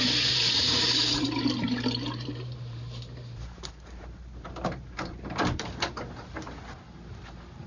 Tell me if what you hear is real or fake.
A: fake